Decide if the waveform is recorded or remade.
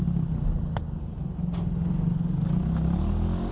recorded